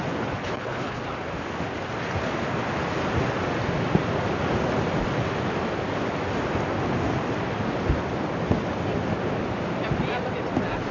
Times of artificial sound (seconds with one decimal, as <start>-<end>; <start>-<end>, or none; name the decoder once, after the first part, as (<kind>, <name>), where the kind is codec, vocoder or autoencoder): 0.4-1.0 (codec, HILCodec)